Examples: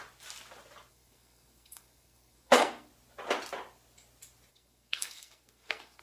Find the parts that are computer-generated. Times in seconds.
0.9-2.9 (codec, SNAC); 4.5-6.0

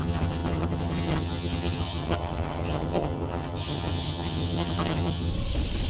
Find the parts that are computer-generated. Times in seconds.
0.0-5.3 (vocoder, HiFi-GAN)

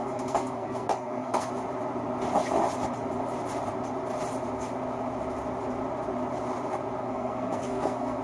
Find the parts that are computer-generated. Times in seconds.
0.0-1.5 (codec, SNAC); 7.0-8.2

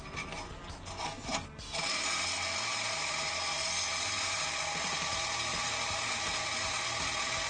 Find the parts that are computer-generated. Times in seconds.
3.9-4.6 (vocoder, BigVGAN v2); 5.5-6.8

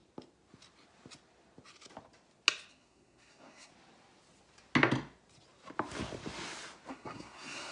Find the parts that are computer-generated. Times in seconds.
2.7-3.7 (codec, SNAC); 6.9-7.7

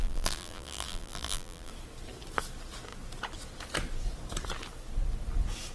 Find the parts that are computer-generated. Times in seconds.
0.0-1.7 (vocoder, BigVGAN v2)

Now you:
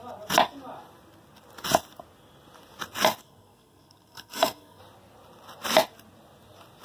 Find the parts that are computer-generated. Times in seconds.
3.2-4.8 (codec, SNAC)

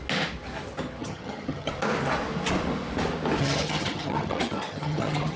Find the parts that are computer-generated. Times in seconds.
1.0-1.7 (vocoder, HiFi-GAN); 3.4-5.4